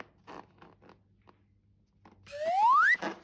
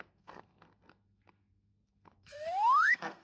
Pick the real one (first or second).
first